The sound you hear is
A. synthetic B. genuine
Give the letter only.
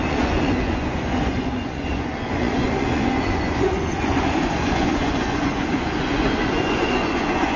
A